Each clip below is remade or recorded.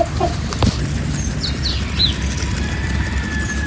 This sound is recorded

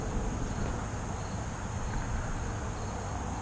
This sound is recorded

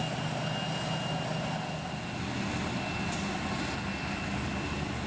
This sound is recorded